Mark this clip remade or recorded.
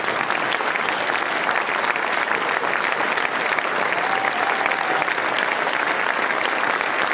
recorded